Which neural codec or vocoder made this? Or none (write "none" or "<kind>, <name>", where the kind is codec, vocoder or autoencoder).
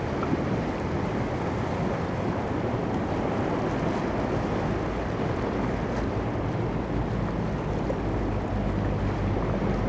none